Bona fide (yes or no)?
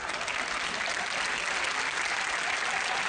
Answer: yes